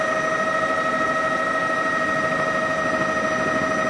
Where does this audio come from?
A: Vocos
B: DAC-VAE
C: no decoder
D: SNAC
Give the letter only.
C